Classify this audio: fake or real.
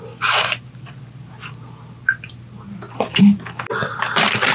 real